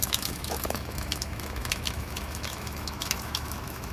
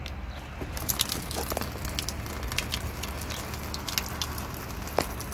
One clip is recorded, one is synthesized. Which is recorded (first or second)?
second